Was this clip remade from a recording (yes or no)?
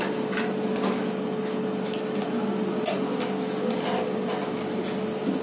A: no